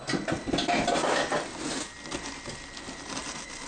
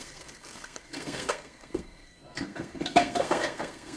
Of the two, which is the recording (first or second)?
first